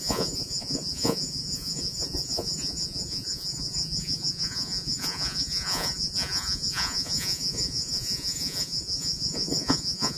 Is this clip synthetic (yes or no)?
yes